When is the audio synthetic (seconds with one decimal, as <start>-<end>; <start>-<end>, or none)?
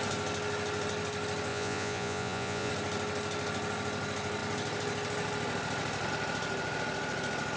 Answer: 1.5-2.7